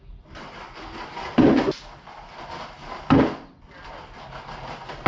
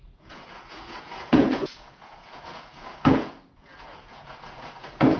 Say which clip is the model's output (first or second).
second